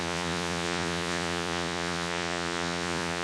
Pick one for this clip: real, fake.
fake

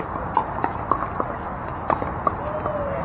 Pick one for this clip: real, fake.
real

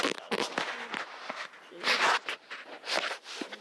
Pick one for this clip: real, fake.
real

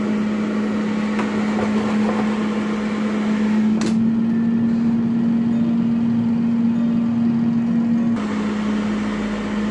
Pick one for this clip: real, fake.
real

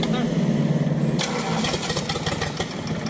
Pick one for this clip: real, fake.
real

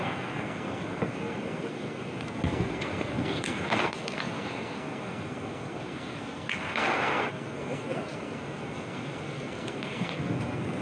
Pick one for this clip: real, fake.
fake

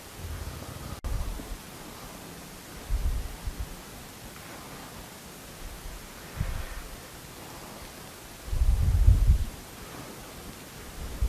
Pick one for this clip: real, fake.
real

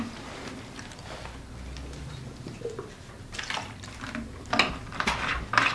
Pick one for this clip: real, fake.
real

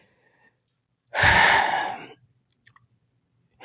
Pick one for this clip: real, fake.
real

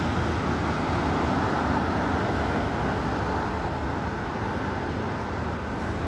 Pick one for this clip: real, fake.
real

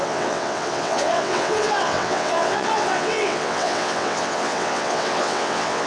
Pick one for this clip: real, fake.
fake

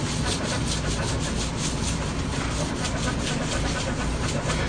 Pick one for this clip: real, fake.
real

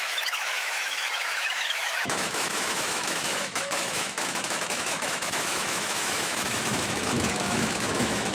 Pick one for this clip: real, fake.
fake